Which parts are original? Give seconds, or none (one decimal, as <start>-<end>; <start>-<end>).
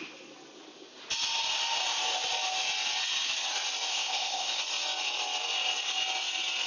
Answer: 0.0-3.9; 4.6-6.7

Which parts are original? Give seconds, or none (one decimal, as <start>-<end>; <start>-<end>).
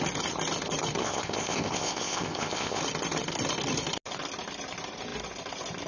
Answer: 0.0-1.0; 2.8-5.9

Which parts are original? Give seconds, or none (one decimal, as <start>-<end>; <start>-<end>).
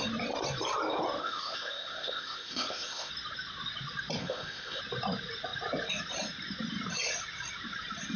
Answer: 0.0-1.2; 3.1-4.2; 4.8-8.2